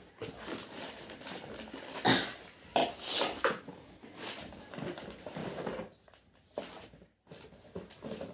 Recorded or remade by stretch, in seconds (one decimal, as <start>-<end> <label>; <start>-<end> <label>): 0.0-8.3 recorded